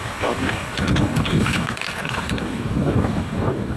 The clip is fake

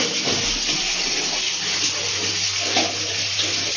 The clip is real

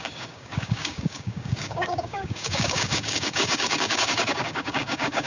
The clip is fake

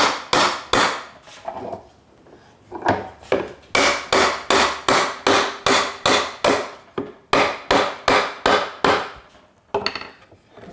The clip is real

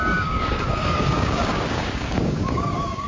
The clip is fake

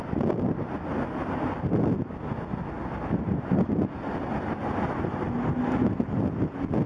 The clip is real